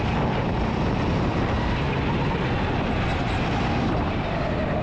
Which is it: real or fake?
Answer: real